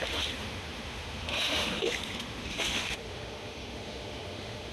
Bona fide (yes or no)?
no